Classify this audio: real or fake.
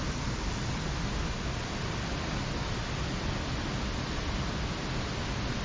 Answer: real